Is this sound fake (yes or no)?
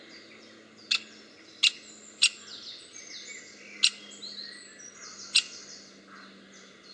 no